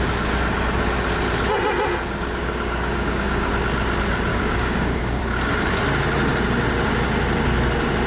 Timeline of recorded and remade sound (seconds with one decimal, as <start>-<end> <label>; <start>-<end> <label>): 0.0-2.4 recorded; 2.4-3.5 remade; 3.5-4.3 recorded; 4.3-5.2 remade; 5.2-8.1 recorded